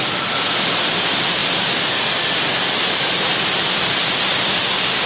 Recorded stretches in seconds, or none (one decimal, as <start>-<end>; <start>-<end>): 0.0-5.1